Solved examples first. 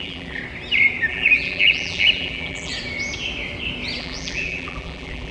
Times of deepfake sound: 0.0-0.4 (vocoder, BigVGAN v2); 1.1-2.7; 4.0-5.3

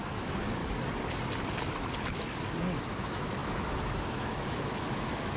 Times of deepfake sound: 0.0-0.6 (autoencoder, DAC-VAE); 3.0-5.4

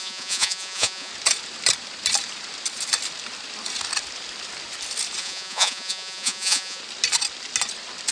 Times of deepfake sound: 0.0-1.1 (vocoder, Vocos); 5.2-6.8